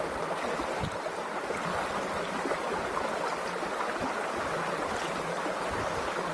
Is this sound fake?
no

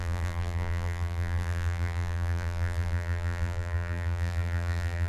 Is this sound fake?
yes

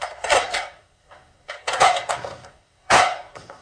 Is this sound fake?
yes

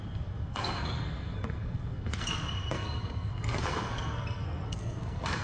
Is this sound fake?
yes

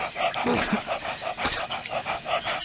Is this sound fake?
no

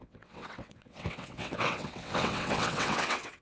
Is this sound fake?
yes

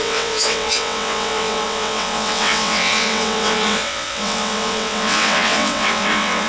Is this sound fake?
yes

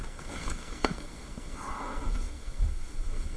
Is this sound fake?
yes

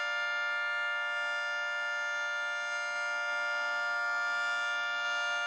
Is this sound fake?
no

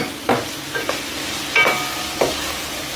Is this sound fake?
no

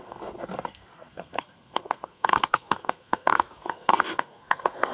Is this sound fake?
yes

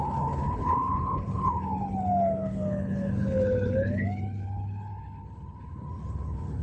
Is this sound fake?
yes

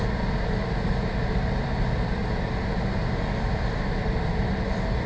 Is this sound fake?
no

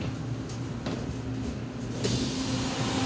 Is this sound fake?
no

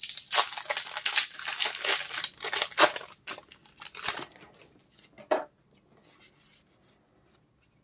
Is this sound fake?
no